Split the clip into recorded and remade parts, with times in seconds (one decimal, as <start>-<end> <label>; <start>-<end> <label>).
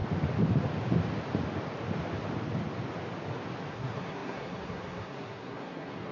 0.0-3.7 recorded; 3.7-6.1 remade